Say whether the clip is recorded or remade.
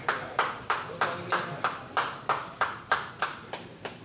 remade